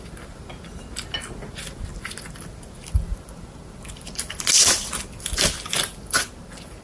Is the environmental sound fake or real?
real